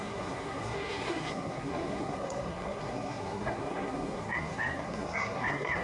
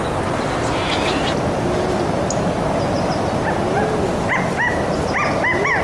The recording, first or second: second